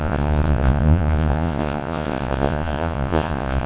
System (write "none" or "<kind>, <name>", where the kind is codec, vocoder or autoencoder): vocoder, Vocos